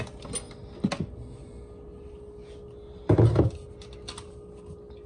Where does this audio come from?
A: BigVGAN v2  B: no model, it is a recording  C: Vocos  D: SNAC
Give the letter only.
B